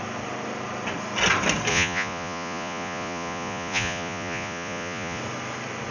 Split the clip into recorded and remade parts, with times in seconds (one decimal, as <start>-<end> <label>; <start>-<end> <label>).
0.0-1.7 recorded; 1.7-5.2 remade; 5.2-5.9 recorded